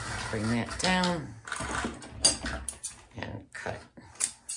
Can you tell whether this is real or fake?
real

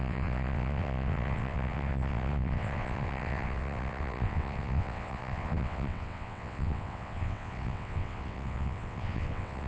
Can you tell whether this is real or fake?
fake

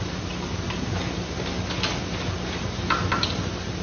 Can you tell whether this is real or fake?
real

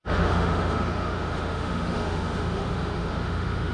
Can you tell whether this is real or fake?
fake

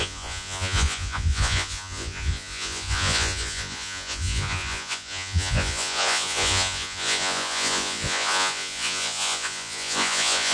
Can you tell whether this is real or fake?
fake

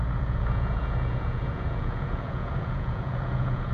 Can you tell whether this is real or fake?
fake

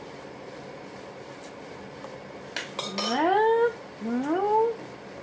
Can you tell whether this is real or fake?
real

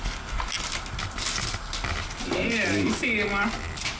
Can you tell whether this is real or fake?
real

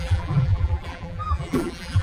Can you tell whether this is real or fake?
fake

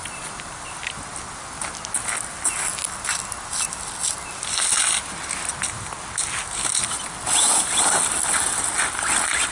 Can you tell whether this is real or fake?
real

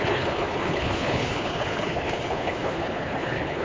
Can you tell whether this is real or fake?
fake